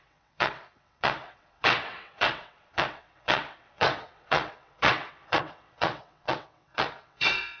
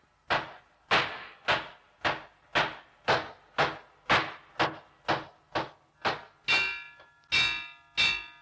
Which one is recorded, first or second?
second